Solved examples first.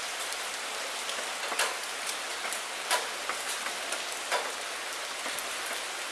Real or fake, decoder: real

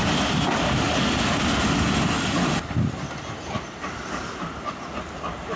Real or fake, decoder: real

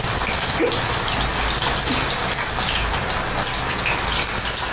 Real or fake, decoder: real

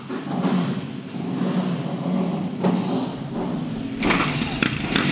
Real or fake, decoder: real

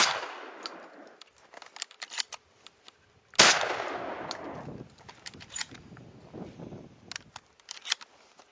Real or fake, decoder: real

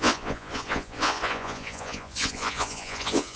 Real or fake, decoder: fake, vocoder, Vocos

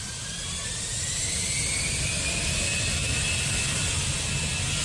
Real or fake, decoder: real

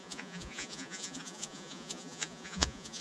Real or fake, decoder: fake, vocoder, Vocos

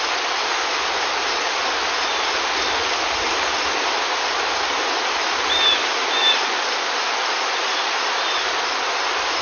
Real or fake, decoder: real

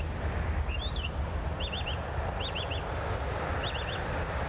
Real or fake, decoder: real